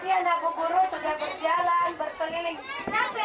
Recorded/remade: remade